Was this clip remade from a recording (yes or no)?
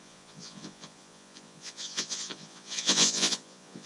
yes